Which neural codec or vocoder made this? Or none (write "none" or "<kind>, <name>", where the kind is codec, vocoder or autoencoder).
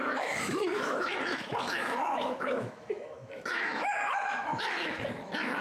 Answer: autoencoder, DAC-VAE